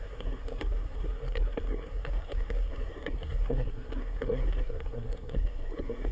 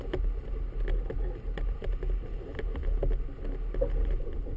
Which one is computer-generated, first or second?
first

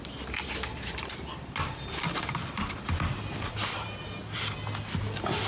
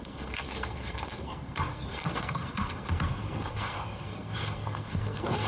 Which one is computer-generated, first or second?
second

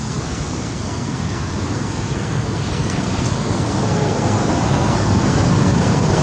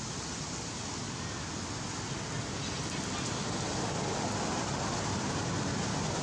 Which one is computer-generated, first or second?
first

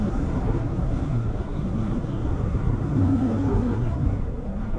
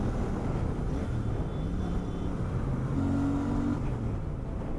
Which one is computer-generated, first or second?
first